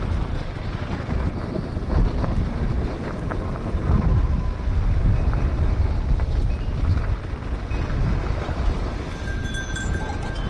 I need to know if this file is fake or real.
real